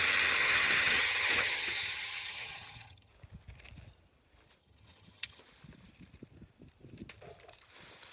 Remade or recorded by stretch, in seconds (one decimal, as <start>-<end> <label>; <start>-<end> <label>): 0.0-0.4 recorded; 0.4-3.1 remade; 3.1-4.6 recorded; 4.6-5.4 remade; 5.4-8.1 recorded